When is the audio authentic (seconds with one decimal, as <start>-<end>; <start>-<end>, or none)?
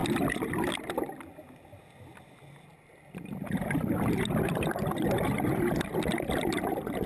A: 0.0-7.1